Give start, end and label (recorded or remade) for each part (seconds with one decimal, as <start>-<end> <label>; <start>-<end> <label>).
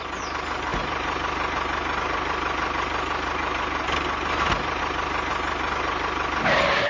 0.0-6.9 recorded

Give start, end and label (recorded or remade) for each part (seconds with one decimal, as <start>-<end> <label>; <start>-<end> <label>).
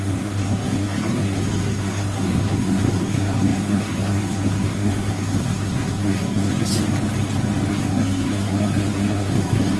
0.0-6.7 remade; 6.7-7.7 recorded; 7.7-9.8 remade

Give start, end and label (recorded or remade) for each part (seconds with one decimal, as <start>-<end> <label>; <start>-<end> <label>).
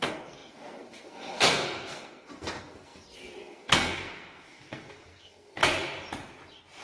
0.0-5.6 remade; 5.6-6.8 recorded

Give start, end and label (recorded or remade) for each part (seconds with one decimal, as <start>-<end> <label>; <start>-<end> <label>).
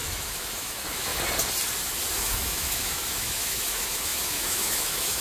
0.0-1.1 remade; 1.1-2.1 recorded; 2.1-5.2 remade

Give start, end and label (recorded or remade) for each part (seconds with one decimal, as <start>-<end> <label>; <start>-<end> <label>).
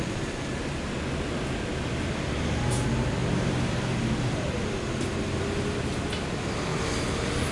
0.0-7.5 recorded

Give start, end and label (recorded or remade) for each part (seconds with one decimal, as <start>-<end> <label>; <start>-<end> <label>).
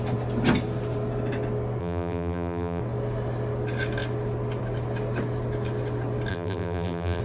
0.0-1.8 recorded; 1.8-2.8 remade; 2.8-6.3 recorded; 6.3-7.2 remade